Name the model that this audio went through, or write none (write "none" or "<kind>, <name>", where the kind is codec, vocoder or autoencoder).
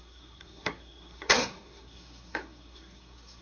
codec, SNAC